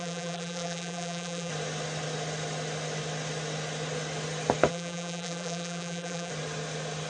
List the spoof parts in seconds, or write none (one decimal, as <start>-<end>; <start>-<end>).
0.0-1.5; 4.7-6.3